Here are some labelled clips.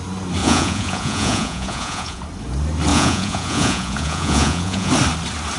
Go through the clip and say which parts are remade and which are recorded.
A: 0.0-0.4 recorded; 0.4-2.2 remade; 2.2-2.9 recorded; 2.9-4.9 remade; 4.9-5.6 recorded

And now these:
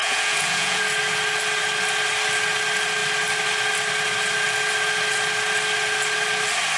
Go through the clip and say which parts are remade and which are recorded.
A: 0.0-0.8 remade; 0.8-6.8 recorded

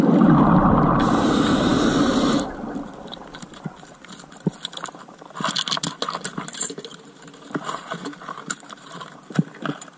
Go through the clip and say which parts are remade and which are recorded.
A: 0.0-1.7 recorded; 1.7-2.6 remade; 2.6-6.9 recorded; 6.9-9.3 remade; 9.3-10.0 recorded